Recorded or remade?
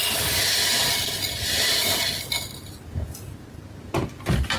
recorded